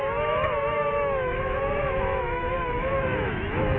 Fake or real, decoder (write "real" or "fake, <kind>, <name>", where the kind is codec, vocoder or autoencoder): fake, autoencoder, DAC-VAE